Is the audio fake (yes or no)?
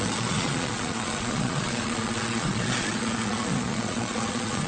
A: yes